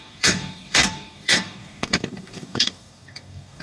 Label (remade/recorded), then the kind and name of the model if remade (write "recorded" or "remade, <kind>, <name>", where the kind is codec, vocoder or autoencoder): remade, codec, DAC